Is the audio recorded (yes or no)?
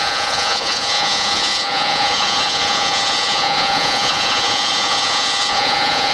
no